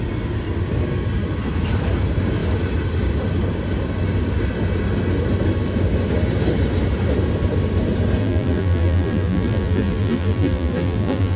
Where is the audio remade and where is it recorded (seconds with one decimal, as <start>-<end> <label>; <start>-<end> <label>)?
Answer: 0.0-8.2 recorded; 8.2-11.4 remade